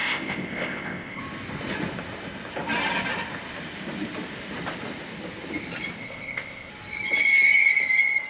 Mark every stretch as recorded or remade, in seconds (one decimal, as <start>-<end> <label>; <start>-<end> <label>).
0.0-1.2 remade; 1.2-6.0 recorded; 6.0-6.7 remade; 6.7-8.3 recorded